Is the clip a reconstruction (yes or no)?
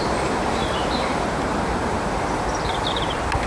yes